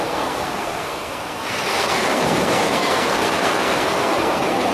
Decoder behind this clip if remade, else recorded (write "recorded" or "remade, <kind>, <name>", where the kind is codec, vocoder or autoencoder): remade, codec, SNAC